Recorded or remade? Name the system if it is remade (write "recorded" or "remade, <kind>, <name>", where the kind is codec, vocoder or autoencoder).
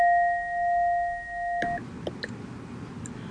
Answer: recorded